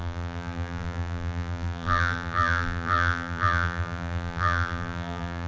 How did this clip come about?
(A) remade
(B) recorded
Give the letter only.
A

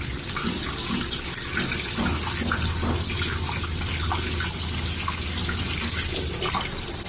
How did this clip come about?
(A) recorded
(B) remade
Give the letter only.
A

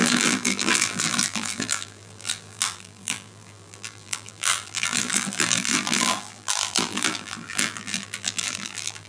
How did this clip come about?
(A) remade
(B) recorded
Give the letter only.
A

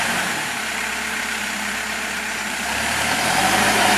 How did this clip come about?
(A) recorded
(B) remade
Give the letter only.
B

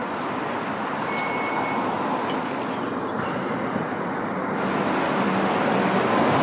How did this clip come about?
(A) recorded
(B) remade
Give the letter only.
A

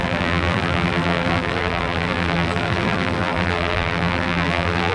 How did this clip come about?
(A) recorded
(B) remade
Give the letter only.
B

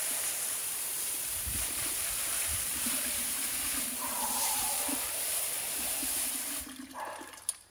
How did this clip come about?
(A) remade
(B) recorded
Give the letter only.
A